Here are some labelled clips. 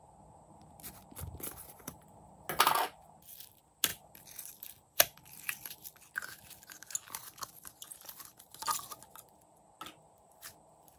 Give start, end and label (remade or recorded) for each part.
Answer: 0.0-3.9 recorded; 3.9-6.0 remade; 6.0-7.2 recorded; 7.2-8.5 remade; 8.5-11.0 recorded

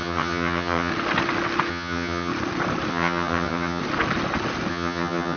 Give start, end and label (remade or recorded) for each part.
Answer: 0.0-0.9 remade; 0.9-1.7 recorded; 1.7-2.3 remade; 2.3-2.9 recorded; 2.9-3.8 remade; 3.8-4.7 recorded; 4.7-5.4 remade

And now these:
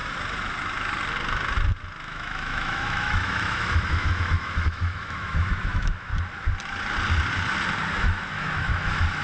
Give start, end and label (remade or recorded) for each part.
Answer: 0.0-2.0 recorded; 2.0-6.1 remade; 6.1-8.0 recorded; 8.0-9.2 remade

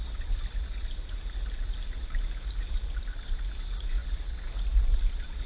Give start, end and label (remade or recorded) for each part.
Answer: 0.0-4.0 remade; 4.0-4.8 recorded; 4.8-5.5 remade

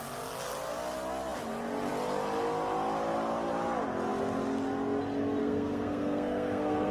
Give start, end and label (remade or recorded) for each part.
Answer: 0.0-5.4 recorded; 5.4-6.9 remade